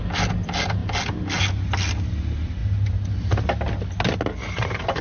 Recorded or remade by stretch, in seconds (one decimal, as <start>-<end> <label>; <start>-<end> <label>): 0.0-5.0 recorded